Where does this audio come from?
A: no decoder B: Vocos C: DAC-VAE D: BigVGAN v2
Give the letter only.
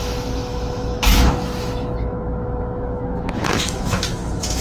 C